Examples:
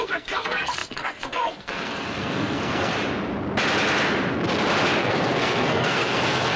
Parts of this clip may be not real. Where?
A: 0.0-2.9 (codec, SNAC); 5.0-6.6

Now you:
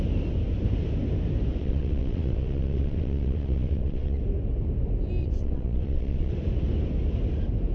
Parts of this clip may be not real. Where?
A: 1.6-4.2 (vocoder, WaveNeXt); 5.2-6.3

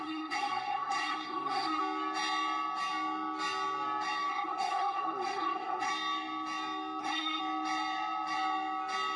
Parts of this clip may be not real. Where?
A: 0.0-1.8 (codec, SNAC); 4.3-5.9; 7.0-7.4

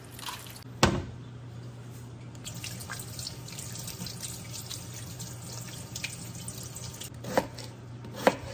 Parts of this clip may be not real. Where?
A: none